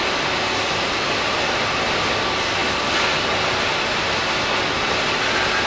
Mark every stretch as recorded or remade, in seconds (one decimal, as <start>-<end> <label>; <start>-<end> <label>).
0.0-5.7 recorded